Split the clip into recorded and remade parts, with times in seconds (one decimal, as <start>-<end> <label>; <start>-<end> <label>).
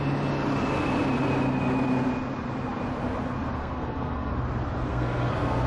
0.0-3.6 recorded; 3.6-4.3 remade; 4.3-4.9 recorded; 4.9-5.7 remade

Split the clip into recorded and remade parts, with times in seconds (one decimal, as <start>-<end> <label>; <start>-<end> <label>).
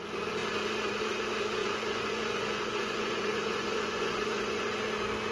0.0-1.6 recorded; 1.6-4.8 remade; 4.8-5.3 recorded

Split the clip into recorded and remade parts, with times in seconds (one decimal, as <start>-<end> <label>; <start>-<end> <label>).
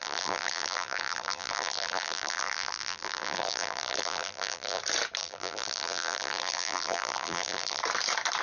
0.0-4.8 remade; 4.8-5.2 recorded; 5.2-7.8 remade; 7.8-8.4 recorded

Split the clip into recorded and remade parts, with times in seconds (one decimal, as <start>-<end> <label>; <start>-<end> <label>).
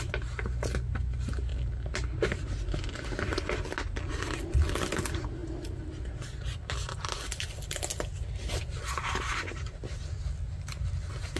0.0-11.4 recorded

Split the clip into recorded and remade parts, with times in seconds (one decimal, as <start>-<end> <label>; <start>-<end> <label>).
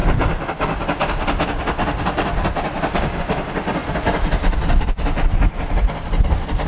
0.0-6.7 recorded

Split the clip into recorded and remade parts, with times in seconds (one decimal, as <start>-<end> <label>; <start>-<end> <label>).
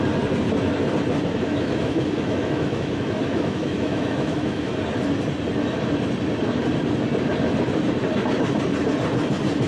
0.0-1.4 recorded; 1.4-4.7 remade; 4.7-9.7 recorded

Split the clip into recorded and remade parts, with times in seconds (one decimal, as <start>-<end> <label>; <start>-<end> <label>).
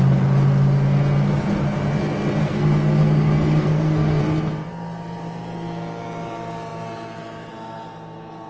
0.0-2.4 recorded; 2.4-4.2 remade; 4.2-8.5 recorded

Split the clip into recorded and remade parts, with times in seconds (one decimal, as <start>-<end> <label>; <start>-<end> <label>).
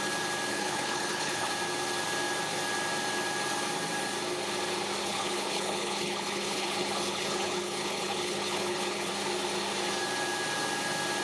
0.0-0.5 recorded; 0.5-1.5 remade; 1.5-5.0 recorded; 5.0-9.1 remade; 9.1-11.2 recorded